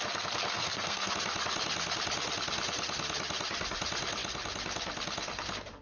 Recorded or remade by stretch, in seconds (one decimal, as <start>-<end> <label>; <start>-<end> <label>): 0.0-0.5 recorded; 0.5-1.1 remade; 1.1-5.8 recorded